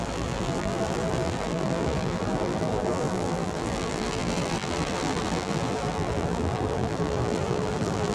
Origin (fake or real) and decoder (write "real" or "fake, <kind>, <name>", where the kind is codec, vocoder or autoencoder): fake, vocoder, BigVGAN v2